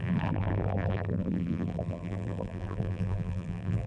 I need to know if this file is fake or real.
fake